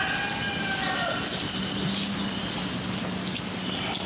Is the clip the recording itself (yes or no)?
yes